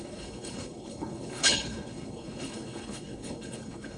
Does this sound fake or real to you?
fake